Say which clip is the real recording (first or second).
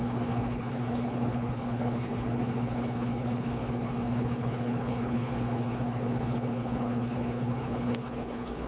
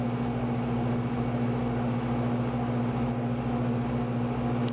second